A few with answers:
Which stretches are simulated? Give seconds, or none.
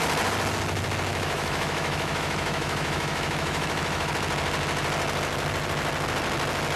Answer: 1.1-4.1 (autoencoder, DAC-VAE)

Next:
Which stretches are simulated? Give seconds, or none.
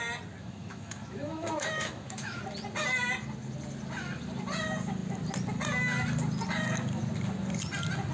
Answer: 0.4-2.4 (autoencoder, DAC-VAE)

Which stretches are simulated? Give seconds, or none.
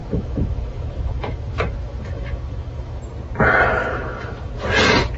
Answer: 0.0-3.0 (autoencoder, DAC-VAE); 3.8-4.5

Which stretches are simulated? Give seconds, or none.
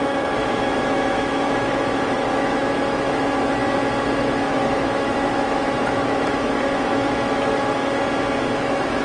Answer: 0.0-3.6 (autoencoder, DAC-VAE); 4.2-8.0; 8.6-9.0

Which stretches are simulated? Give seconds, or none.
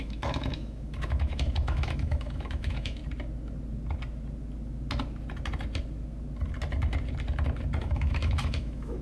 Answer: 0.0-3.0 (autoencoder, DAC-VAE); 7.8-9.0